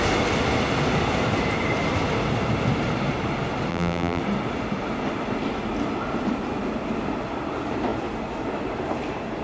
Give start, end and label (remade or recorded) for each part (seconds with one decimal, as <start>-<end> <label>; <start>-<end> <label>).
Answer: 0.0-3.7 recorded; 3.7-4.2 remade; 4.2-9.4 recorded